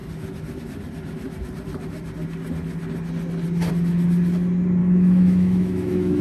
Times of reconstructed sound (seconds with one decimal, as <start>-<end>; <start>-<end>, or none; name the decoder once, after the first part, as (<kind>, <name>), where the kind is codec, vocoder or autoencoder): 4.8-6.2 (autoencoder, DAC-VAE)